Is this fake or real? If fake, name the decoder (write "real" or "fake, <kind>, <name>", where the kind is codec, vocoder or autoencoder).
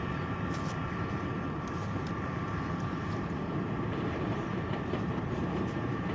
fake, vocoder, BigVGAN v2